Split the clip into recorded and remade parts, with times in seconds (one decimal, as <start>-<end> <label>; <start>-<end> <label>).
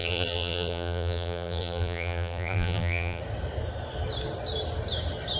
0.0-3.2 remade; 3.2-5.4 recorded